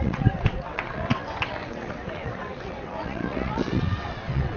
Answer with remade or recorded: remade